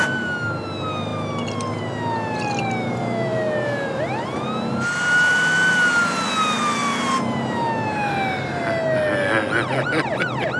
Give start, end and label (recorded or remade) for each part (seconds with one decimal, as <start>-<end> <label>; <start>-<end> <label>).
0.0-10.6 recorded